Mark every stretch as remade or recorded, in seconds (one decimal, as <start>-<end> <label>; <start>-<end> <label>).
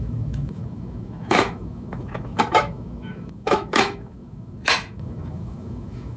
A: 0.0-6.2 remade